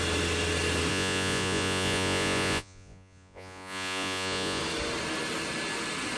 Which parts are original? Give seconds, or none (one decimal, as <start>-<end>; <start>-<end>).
0.0-0.9; 4.6-6.2